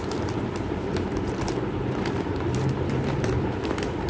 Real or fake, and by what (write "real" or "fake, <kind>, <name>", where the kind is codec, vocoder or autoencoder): fake, vocoder, BigVGAN v2